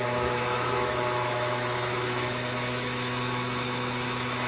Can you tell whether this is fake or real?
fake